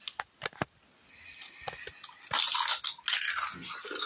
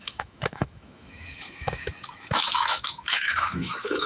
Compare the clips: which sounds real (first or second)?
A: first